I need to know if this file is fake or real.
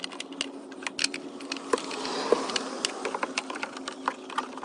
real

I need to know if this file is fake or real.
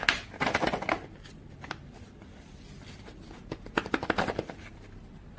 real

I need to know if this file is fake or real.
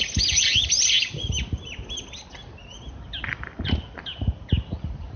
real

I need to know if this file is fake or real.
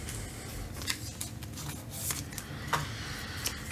real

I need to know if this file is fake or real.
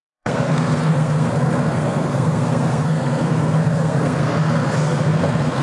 fake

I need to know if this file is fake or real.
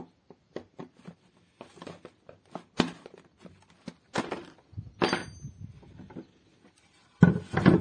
real